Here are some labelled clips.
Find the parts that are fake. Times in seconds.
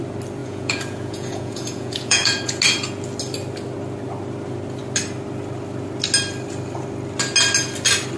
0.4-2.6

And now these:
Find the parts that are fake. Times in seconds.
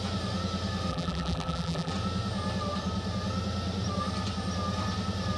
0.9-1.9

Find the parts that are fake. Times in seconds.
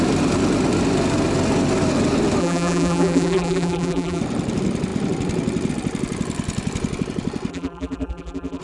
2.4-4.2; 7.5-8.6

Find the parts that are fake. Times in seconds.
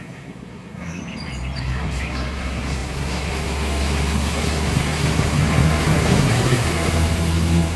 0.0-1.0; 1.6-7.8